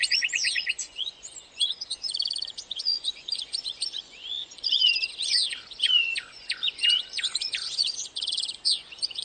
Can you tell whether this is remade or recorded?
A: remade